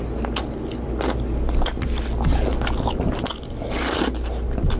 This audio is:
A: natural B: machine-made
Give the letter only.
A